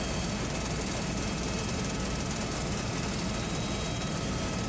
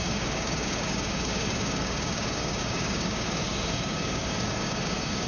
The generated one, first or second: second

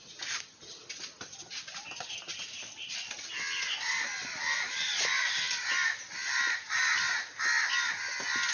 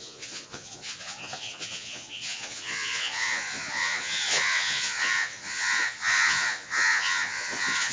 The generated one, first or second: second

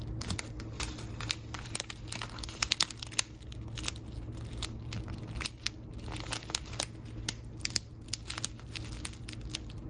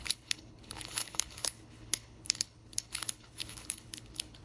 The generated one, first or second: second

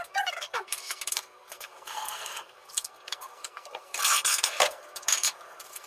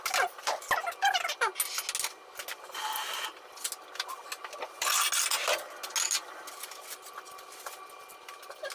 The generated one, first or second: first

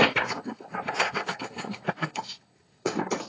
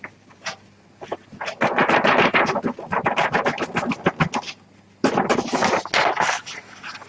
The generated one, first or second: first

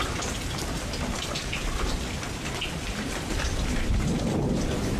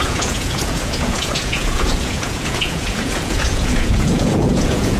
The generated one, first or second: second